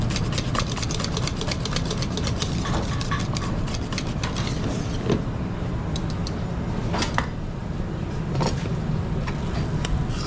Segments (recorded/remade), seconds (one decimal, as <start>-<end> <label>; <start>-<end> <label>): 0.0-7.6 recorded; 7.6-9.0 remade; 9.0-10.3 recorded